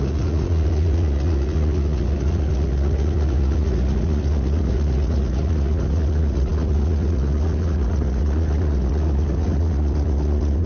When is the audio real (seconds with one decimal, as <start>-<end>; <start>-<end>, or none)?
none

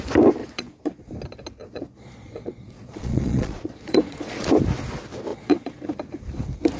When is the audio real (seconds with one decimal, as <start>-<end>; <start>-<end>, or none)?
0.0-0.4; 1.1-1.6; 4.5-5.3; 5.9-6.8

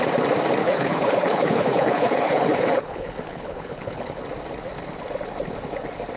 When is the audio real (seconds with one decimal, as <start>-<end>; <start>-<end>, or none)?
0.0-0.6; 4.2-6.2

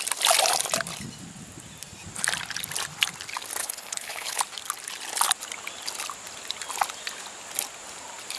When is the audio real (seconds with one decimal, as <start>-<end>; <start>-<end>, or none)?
0.0-3.6; 4.4-8.4

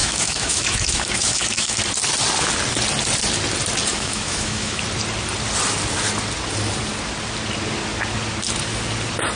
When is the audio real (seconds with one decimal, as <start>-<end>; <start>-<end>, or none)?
1.8-3.9; 4.8-9.4